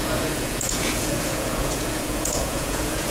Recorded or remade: remade